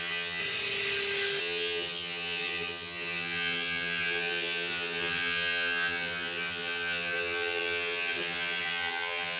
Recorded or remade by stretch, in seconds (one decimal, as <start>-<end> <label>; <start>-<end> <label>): 0.0-0.4 remade; 0.4-1.4 recorded; 1.4-9.4 remade